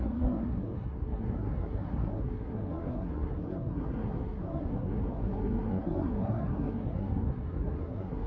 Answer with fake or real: fake